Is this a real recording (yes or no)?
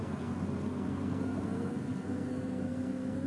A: no